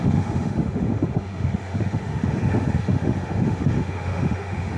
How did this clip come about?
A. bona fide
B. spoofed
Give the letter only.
B